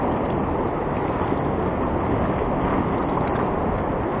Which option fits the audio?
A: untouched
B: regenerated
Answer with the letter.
A